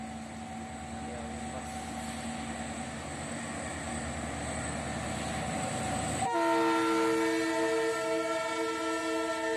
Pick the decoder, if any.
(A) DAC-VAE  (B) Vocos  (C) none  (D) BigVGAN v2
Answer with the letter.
C